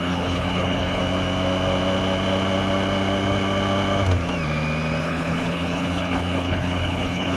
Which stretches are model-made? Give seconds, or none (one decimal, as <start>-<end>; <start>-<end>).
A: 0.0-1.0; 5.0-7.4